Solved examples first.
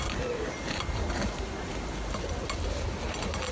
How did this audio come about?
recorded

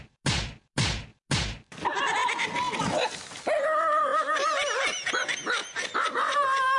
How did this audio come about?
recorded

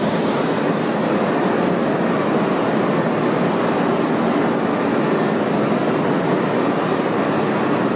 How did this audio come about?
recorded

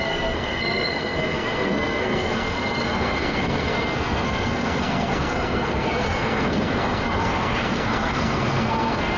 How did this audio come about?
remade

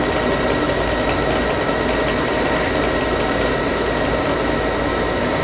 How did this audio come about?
recorded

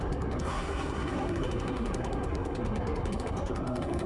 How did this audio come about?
remade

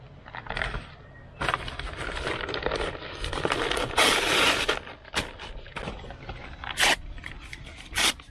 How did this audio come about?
recorded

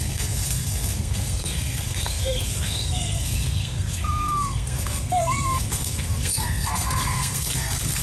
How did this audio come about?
remade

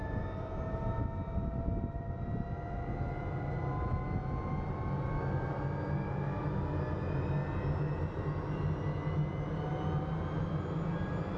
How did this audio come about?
recorded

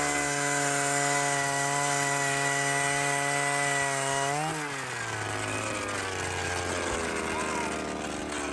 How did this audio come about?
recorded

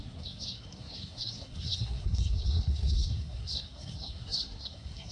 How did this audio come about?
remade